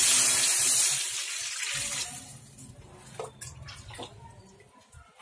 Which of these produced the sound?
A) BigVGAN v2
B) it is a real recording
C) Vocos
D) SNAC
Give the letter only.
B